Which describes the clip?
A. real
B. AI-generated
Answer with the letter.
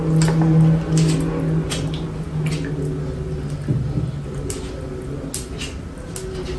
A